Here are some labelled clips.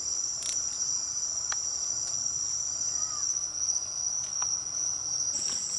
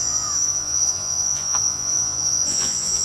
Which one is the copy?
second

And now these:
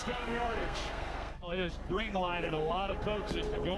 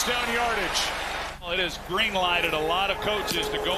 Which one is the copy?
first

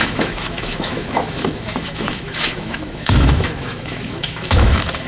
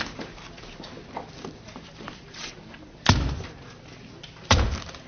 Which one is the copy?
first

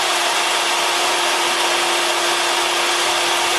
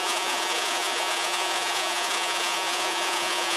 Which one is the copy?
second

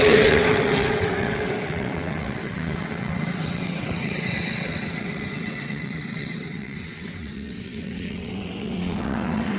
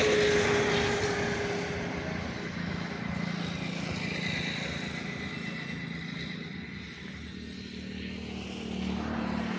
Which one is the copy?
first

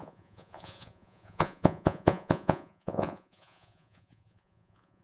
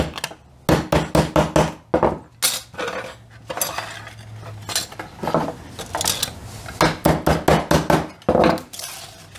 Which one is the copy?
first